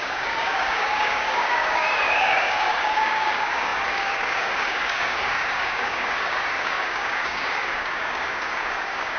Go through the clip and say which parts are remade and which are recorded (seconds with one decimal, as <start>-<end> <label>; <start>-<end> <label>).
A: 0.0-9.2 remade